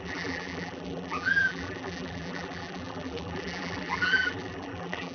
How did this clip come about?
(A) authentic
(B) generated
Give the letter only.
B